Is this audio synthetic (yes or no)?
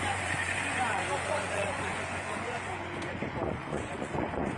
yes